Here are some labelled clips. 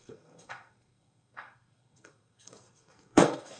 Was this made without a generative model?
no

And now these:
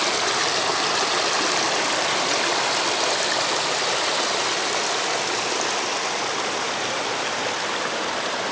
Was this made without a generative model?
yes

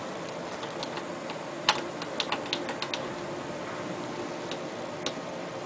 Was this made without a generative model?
yes